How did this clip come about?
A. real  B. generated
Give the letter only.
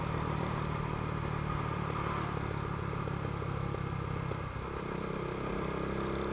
A